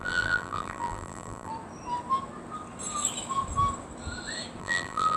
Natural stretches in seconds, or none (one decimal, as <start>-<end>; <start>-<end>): 1.5-4.6